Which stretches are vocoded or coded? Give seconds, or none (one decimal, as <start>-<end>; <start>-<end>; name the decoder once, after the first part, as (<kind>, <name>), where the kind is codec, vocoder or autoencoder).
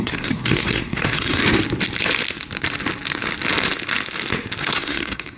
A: 0.0-1.4 (codec, SNAC); 4.6-5.4